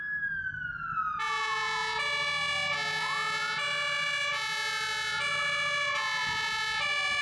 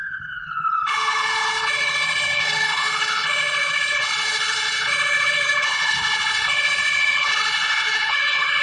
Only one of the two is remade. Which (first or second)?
second